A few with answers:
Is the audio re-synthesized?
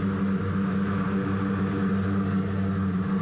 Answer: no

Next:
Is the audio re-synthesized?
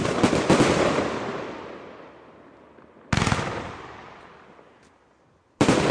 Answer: no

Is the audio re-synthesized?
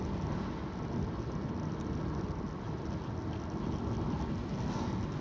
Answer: no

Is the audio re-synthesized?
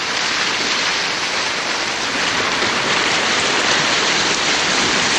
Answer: no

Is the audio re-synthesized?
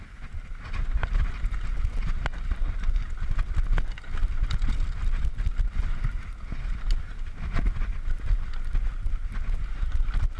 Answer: no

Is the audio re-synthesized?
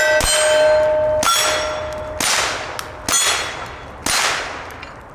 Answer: no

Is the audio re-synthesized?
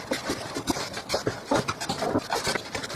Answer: no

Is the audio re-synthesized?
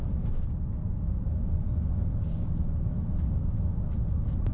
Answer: no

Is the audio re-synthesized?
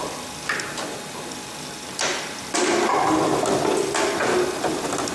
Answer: no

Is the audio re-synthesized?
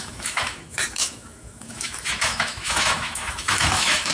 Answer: yes